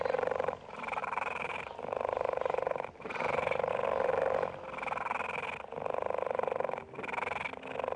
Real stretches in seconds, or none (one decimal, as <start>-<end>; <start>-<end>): 0.0-1.0; 3.7-8.0